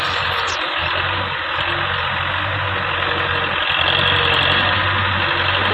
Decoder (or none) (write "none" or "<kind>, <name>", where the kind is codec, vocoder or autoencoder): none